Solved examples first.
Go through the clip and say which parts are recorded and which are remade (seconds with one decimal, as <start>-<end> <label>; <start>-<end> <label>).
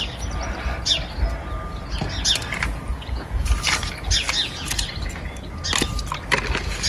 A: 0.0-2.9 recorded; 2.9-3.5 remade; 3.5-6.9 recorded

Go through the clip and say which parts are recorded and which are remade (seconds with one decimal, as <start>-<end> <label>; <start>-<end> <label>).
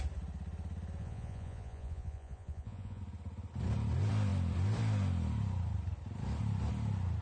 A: 0.0-1.0 recorded; 1.0-3.0 remade; 3.0-7.2 recorded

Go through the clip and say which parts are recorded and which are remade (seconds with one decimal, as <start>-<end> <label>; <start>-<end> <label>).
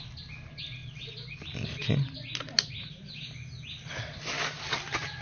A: 0.0-5.2 recorded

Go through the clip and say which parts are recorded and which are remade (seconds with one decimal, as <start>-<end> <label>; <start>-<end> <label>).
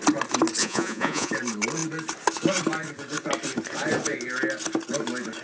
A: 0.0-0.6 recorded; 0.6-1.3 remade; 1.3-5.4 recorded